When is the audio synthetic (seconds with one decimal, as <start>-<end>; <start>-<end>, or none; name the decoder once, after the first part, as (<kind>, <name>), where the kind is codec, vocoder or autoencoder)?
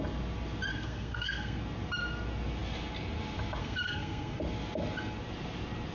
0.7-1.6 (codec, SNAC); 3.6-4.4